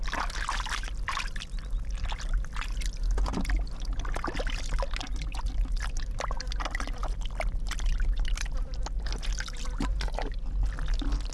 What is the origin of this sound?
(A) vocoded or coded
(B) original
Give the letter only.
B